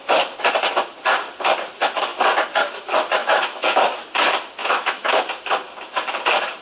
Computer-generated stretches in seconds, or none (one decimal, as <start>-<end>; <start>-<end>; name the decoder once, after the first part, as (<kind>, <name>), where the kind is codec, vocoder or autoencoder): 3.2-3.8 (autoencoder, DAC-VAE); 4.6-5.2

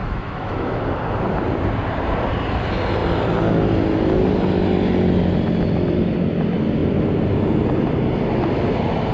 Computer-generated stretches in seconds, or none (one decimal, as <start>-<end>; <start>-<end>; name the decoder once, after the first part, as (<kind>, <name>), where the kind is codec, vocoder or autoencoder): 0.0-0.8 (autoencoder, DAC-VAE)

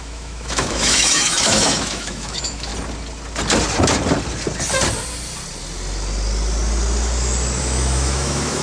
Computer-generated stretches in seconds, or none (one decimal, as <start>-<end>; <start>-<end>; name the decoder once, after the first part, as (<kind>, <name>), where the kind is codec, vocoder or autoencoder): 0.0-2.7 (autoencoder, DAC-VAE); 7.6-8.6